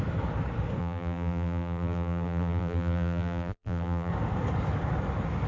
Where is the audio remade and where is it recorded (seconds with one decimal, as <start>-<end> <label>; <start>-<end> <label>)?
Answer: 0.0-0.8 recorded; 0.8-4.1 remade; 4.1-5.5 recorded